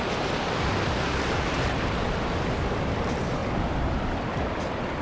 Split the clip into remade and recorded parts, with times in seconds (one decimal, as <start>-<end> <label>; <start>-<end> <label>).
0.0-5.0 recorded